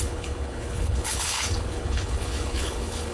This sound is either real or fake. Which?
fake